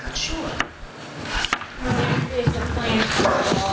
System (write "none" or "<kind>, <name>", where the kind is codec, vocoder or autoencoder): none